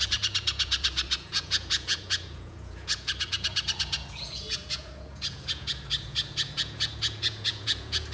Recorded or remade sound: remade